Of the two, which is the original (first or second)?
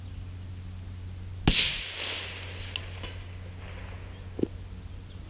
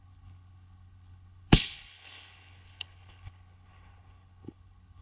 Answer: first